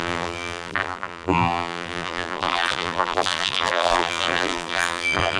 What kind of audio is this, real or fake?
fake